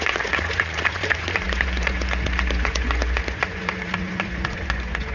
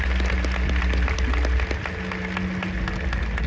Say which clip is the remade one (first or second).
first